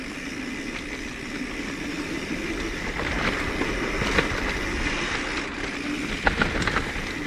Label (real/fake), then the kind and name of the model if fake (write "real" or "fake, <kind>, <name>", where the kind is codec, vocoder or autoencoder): real